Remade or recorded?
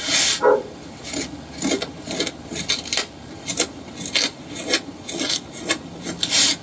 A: recorded